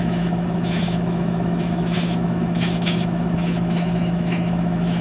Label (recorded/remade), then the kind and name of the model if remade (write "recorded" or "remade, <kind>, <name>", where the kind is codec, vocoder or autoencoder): remade, autoencoder, DAC-VAE